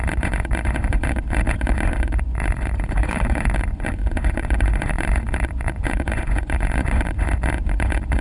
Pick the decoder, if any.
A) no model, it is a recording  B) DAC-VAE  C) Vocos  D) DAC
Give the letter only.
C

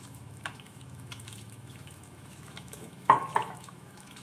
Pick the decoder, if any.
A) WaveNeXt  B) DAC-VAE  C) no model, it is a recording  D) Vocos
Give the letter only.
B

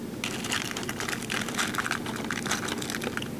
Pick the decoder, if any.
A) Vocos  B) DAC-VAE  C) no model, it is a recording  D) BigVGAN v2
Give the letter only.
C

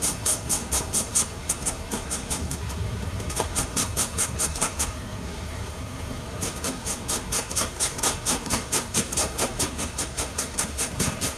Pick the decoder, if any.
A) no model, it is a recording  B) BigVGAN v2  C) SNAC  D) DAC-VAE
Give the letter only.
C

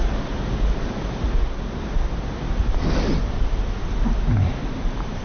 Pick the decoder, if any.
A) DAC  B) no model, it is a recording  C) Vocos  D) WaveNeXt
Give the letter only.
B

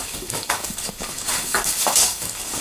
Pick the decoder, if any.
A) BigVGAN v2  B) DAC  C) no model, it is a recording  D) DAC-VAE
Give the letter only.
B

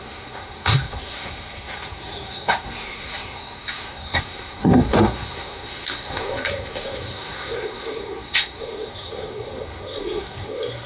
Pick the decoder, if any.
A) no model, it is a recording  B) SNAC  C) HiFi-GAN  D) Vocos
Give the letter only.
B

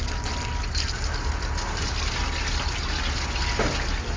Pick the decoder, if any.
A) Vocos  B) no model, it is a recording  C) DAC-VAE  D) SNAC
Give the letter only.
B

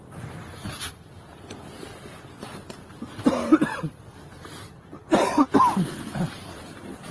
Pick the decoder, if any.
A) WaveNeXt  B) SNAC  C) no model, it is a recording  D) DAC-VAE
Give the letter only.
C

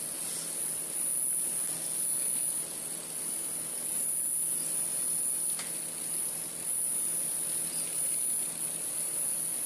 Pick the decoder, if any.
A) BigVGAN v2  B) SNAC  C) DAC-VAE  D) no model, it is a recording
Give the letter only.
D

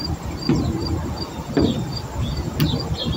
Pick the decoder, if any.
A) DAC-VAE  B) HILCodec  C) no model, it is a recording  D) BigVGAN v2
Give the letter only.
C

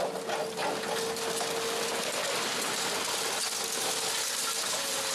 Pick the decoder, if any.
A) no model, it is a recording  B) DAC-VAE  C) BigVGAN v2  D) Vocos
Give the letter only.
A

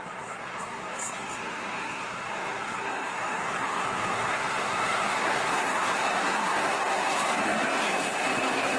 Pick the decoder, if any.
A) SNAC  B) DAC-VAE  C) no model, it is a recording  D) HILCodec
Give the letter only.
A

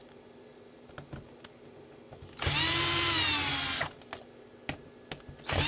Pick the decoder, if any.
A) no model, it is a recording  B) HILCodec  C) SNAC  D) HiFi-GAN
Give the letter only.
A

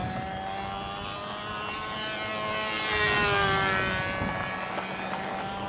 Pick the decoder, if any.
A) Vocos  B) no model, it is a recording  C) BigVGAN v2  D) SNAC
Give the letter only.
B